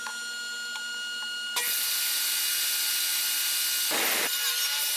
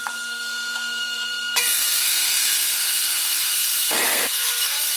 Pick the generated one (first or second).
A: second